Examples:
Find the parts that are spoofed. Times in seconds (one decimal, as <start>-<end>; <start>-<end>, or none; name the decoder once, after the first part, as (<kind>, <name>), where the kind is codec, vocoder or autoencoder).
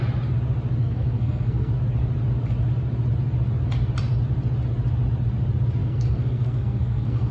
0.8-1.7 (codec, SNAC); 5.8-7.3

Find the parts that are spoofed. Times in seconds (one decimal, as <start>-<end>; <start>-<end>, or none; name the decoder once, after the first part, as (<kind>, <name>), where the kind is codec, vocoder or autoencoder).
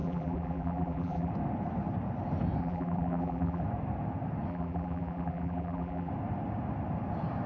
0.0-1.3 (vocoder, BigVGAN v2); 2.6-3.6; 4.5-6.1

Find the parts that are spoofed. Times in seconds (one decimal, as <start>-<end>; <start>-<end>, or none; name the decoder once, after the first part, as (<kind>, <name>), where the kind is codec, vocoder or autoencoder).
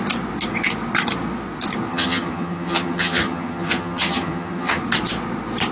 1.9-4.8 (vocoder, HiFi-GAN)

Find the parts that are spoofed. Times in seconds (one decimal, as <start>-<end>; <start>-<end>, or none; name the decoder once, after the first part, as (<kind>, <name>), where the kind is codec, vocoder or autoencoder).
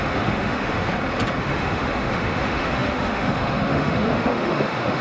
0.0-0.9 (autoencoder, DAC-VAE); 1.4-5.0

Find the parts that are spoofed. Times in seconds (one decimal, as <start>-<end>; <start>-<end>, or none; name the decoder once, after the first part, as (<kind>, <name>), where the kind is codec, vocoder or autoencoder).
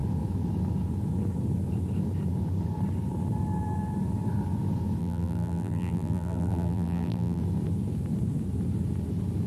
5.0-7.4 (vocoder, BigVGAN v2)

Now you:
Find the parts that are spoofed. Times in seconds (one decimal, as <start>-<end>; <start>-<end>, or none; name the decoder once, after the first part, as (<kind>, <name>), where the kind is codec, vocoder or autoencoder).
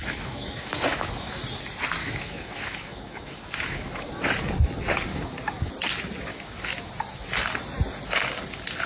0.0-1.4 (autoencoder, DAC-VAE); 2.0-4.1; 5.1-5.7; 6.3-6.9